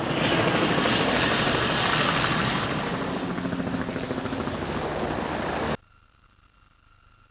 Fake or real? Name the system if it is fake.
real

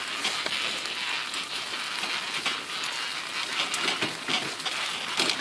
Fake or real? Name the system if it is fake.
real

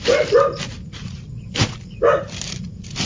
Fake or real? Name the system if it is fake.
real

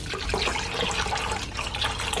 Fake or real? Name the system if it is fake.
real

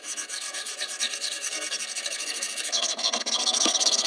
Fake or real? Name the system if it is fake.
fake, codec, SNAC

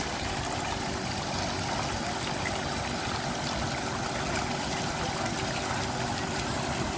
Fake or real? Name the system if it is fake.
real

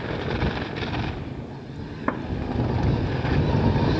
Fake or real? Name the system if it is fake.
real